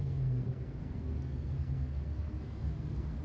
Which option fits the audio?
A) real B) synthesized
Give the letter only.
B